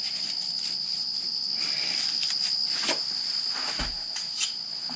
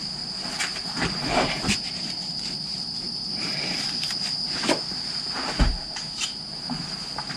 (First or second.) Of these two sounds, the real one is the first